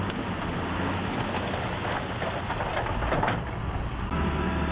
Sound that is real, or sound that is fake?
real